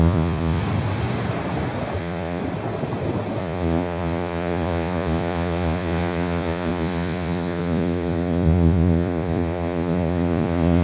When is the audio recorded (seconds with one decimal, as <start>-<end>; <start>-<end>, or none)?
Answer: 0.6-2.0; 2.4-3.4